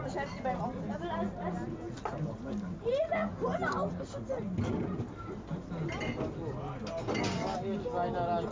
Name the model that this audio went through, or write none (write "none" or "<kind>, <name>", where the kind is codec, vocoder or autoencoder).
none